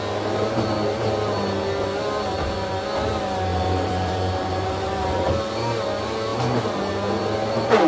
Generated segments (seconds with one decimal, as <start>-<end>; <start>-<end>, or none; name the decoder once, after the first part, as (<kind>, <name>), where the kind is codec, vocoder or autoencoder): 3.5-5.3 (vocoder, BigVGAN v2)